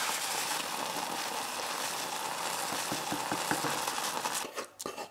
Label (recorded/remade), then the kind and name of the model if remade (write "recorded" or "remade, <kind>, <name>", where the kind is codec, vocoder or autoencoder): recorded